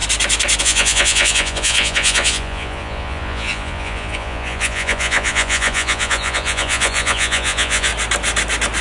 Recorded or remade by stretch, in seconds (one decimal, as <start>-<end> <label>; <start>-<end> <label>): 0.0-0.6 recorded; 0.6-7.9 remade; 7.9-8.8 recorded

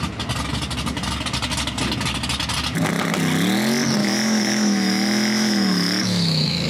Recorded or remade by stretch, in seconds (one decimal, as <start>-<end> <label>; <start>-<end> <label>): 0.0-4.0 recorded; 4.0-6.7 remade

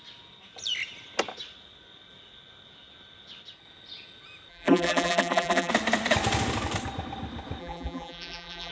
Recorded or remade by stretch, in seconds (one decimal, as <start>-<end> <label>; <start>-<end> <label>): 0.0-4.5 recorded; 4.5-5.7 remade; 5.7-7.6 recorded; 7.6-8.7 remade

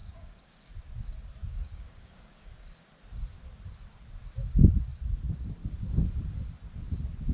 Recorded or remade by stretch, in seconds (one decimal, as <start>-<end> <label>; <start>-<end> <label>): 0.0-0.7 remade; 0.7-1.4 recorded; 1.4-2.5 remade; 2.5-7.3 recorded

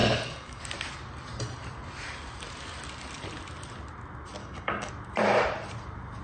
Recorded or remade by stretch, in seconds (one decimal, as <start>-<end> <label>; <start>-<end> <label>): 0.0-0.6 remade; 0.6-4.4 recorded; 4.4-4.9 remade; 4.9-6.2 recorded

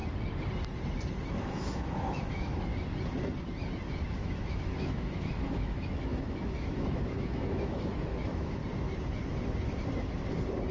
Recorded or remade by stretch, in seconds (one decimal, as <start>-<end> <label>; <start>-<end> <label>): 0.0-1.3 recorded; 1.3-2.7 remade; 2.7-4.1 recorded; 4.1-8.6 remade; 8.6-10.7 recorded